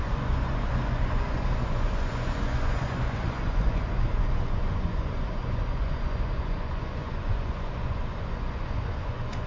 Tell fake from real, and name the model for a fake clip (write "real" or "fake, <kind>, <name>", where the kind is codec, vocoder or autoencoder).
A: fake, vocoder, Vocos